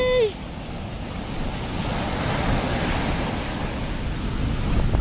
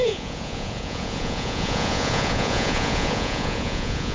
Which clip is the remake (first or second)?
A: second